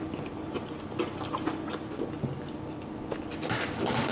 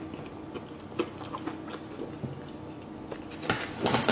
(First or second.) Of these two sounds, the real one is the second